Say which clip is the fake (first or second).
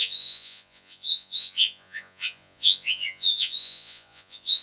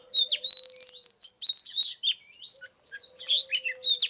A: first